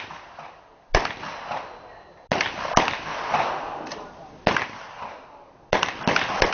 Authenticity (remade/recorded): recorded